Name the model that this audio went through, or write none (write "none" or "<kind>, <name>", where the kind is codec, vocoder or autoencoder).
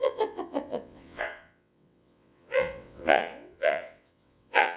vocoder, WaveNeXt